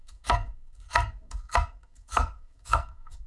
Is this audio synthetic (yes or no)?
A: yes